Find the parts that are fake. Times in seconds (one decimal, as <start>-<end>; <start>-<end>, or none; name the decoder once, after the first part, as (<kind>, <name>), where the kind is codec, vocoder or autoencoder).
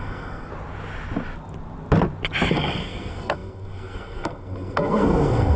0.0-0.5 (codec, SNAC); 2.5-5.6